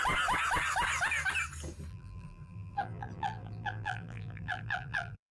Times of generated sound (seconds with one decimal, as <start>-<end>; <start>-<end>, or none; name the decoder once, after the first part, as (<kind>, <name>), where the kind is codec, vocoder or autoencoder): 1.9-5.3 (vocoder, BigVGAN v2)

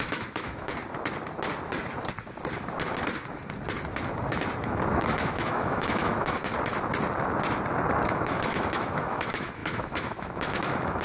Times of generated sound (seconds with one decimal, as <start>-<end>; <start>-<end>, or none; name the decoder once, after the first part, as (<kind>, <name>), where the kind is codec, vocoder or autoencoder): 0.0-0.7 (autoencoder, DAC-VAE); 4.6-6.5; 8.1-11.0